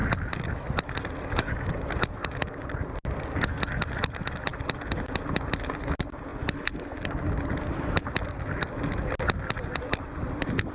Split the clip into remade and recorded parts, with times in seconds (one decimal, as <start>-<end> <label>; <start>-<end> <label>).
0.0-10.7 recorded